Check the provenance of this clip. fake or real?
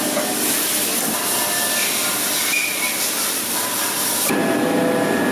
real